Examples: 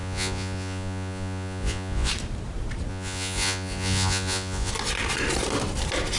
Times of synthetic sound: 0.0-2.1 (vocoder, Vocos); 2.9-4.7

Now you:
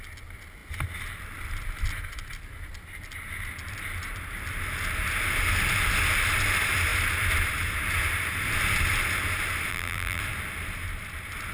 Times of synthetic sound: 9.7-10.2 (vocoder, BigVGAN v2)